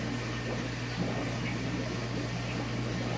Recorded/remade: recorded